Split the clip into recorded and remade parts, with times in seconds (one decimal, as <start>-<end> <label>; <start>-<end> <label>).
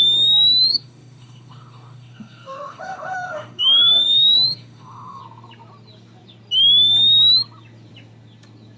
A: 0.0-0.7 recorded; 0.7-5.2 remade; 5.2-8.8 recorded